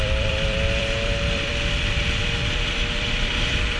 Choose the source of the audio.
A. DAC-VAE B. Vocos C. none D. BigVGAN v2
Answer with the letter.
D